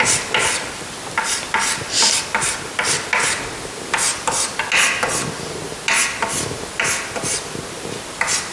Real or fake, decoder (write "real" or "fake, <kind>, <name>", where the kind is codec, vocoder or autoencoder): real